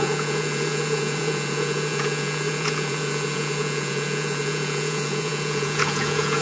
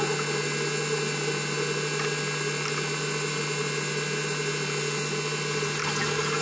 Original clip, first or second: second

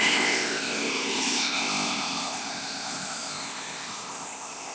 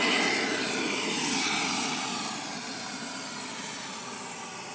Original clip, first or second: second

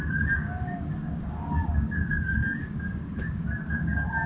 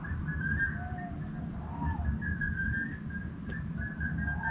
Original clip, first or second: second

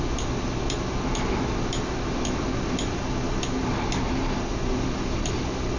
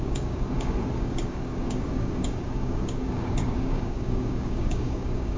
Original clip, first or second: first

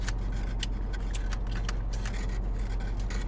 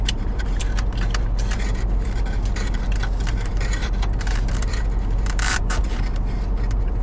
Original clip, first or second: first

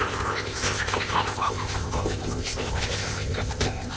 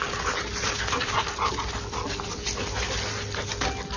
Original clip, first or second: second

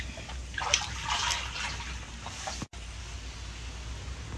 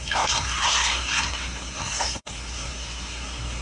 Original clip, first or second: first